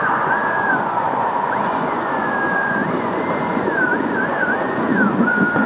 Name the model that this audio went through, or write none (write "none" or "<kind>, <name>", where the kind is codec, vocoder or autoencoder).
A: vocoder, Vocos